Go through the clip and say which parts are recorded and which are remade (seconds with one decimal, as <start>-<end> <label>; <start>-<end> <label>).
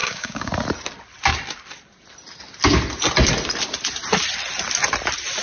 0.0-0.5 remade; 0.5-5.4 recorded